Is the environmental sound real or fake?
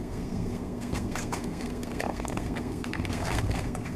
fake